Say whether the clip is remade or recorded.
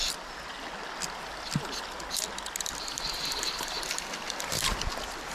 recorded